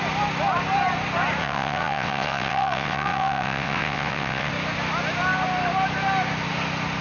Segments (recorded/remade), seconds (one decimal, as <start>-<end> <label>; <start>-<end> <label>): 0.0-1.4 recorded; 1.4-4.5 remade; 4.5-7.0 recorded

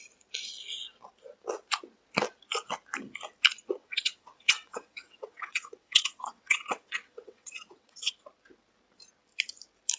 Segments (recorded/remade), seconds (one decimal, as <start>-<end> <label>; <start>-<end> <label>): 0.0-3.8 recorded; 3.8-8.1 remade; 8.1-10.0 recorded

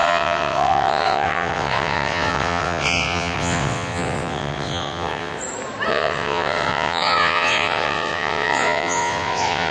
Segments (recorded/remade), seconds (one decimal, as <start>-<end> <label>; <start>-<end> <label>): 0.0-5.4 remade; 5.4-5.9 recorded; 5.9-9.7 remade

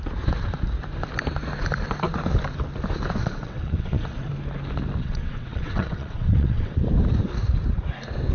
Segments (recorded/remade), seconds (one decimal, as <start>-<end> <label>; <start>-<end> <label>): 0.0-3.2 recorded; 3.2-4.3 remade; 4.3-5.0 recorded; 5.0-6.8 remade; 6.8-8.3 recorded

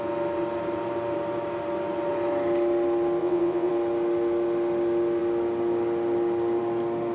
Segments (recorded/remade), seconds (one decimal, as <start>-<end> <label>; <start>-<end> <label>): 0.0-3.2 recorded; 3.2-3.7 remade; 3.7-7.1 recorded

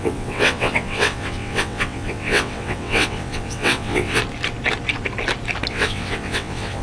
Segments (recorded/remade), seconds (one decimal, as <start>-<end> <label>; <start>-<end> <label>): 0.0-4.2 remade; 4.2-5.7 recorded; 5.7-6.8 remade

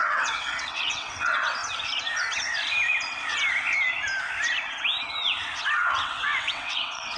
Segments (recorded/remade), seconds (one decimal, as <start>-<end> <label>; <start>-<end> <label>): 0.0-1.6 remade; 1.6-5.9 recorded; 5.9-7.2 remade